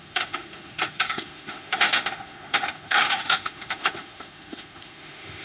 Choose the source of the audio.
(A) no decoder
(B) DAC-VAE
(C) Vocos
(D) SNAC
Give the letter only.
B